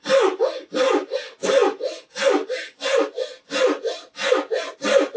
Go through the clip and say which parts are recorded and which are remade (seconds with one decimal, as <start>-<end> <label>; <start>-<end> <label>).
0.0-5.2 recorded